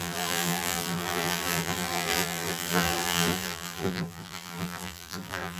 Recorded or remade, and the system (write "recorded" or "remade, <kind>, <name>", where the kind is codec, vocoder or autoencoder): remade, vocoder, BigVGAN v2